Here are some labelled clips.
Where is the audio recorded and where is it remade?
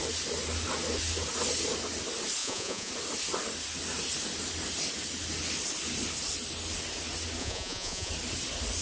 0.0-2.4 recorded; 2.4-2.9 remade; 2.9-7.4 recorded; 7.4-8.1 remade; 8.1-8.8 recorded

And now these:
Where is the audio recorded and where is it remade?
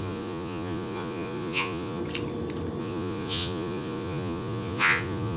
0.0-2.0 remade; 2.0-2.8 recorded; 2.8-5.4 remade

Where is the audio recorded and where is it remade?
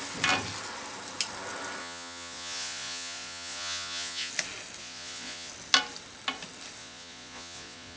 0.0-1.8 recorded; 1.8-4.3 remade; 4.3-4.8 recorded; 4.8-5.5 remade; 5.5-6.8 recorded; 6.8-8.0 remade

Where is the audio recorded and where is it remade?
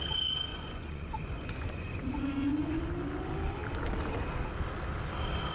0.0-0.5 recorded; 0.5-2.8 remade; 2.8-5.5 recorded